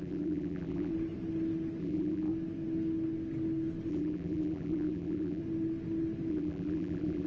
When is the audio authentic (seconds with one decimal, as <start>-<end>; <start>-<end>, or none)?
0.9-1.8; 2.3-3.9; 5.4-6.3